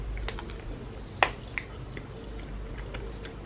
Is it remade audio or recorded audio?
recorded